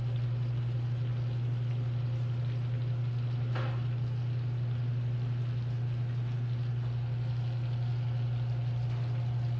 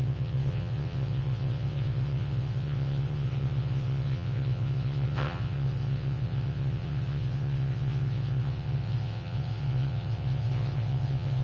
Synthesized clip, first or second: second